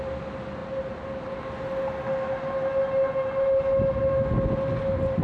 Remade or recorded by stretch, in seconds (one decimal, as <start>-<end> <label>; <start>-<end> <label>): 0.0-5.2 recorded